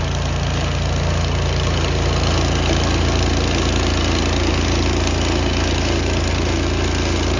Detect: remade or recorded recorded